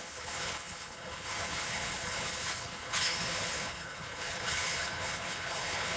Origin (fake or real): fake